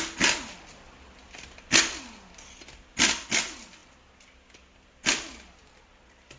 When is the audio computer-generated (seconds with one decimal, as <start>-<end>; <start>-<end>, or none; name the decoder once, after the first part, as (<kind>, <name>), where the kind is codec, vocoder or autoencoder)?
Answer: none